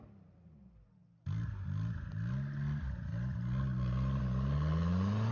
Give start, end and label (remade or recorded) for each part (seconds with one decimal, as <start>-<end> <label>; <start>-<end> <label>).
0.0-5.3 recorded